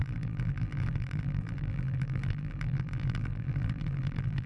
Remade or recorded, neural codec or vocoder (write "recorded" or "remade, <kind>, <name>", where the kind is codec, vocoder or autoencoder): remade, vocoder, BigVGAN v2